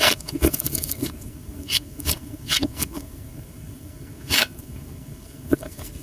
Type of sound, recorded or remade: remade